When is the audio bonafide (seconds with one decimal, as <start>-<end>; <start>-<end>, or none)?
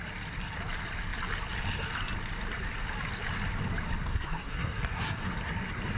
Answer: 0.0-4.1; 5.2-6.0